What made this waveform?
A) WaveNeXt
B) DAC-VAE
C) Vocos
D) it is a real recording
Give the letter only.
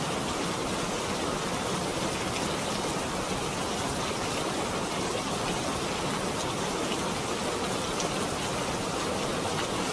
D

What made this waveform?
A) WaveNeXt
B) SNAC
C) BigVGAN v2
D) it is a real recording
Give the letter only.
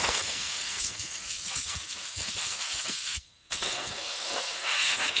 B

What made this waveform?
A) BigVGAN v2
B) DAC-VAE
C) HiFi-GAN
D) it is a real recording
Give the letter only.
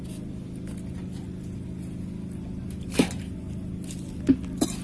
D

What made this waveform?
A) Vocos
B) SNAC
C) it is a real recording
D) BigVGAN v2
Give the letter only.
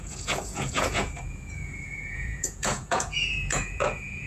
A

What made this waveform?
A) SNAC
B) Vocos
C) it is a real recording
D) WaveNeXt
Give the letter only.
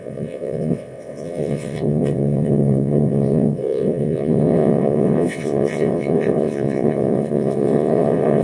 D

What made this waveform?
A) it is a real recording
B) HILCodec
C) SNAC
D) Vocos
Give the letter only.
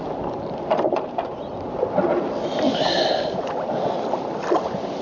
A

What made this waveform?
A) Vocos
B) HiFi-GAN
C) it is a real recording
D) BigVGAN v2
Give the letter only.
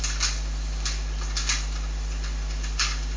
C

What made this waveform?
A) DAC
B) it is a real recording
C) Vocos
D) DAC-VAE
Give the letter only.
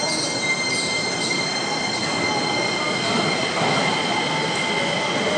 B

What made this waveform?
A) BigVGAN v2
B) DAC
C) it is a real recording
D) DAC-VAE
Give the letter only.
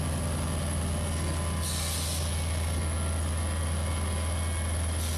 C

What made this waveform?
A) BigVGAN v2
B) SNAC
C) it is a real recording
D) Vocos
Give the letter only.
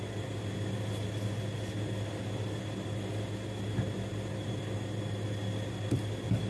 C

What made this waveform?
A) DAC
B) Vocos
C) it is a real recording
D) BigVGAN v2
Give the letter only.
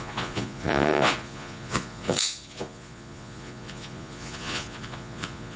B